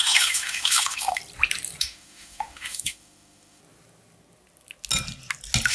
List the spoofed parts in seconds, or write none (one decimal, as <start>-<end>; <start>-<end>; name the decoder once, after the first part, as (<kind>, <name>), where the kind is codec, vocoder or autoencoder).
0.0-1.2 (autoencoder, DAC-VAE); 1.8-3.6